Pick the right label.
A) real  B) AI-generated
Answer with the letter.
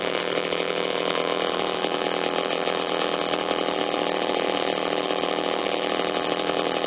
B